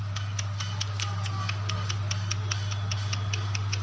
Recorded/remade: recorded